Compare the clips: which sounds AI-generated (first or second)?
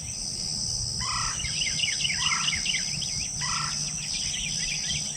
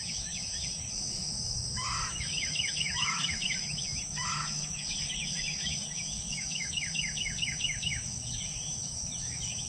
second